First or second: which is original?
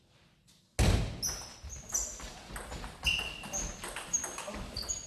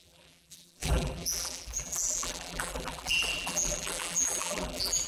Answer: first